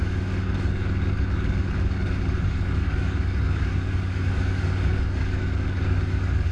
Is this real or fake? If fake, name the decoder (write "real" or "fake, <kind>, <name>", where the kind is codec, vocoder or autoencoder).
fake, codec, DAC